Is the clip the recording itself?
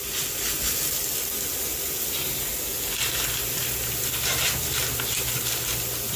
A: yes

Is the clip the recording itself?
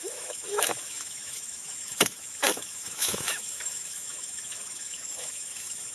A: no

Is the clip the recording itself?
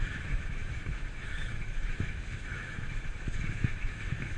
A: no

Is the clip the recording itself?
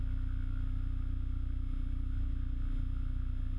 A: yes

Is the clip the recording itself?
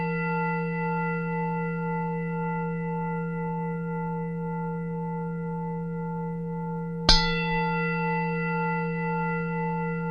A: yes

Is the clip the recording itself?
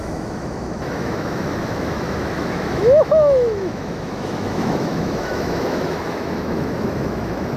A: no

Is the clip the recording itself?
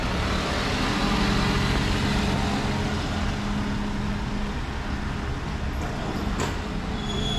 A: yes